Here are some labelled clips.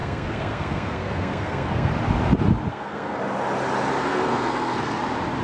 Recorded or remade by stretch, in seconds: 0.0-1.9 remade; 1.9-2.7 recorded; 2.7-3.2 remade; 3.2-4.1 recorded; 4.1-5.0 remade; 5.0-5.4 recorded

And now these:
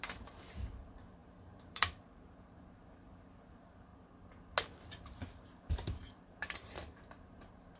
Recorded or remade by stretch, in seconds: 0.0-3.9 remade; 3.9-5.0 recorded; 5.0-7.8 remade

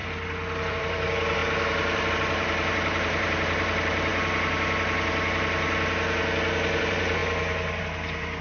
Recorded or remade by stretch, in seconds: 0.0-0.7 recorded; 0.7-4.1 remade; 4.1-6.8 recorded; 6.8-7.2 remade; 7.2-7.8 recorded; 7.8-8.4 remade

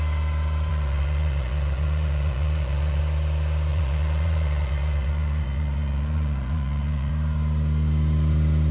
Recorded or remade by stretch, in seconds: 0.0-0.7 recorded; 0.7-3.0 remade; 3.0-3.7 recorded; 3.7-7.1 remade; 7.1-8.7 recorded

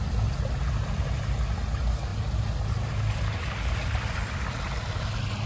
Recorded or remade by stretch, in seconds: 0.0-5.5 recorded

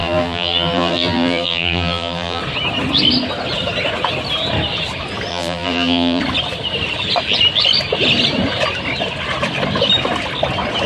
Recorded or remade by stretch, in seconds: 0.0-2.4 remade; 2.4-5.3 recorded; 5.3-6.2 remade; 6.2-10.9 recorded